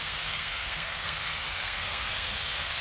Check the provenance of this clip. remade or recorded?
remade